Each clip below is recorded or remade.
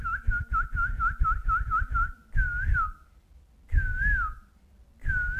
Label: recorded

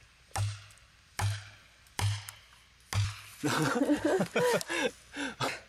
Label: recorded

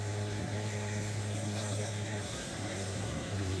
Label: remade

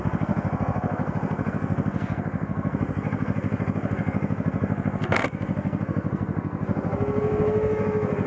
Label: remade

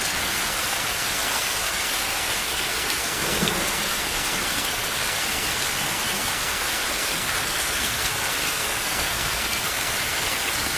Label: remade